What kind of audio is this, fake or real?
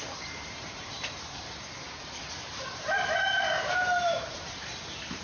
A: fake